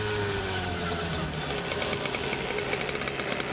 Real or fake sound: real